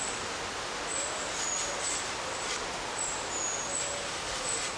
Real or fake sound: real